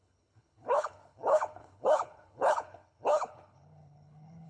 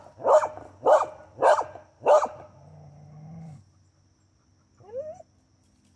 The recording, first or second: second